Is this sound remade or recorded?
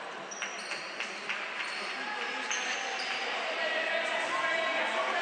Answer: remade